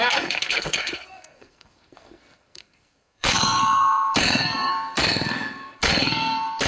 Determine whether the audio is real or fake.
fake